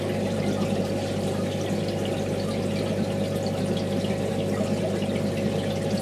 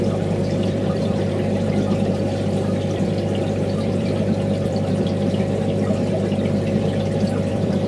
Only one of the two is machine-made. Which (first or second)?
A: second